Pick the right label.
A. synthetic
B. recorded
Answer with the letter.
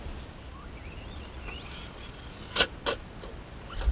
B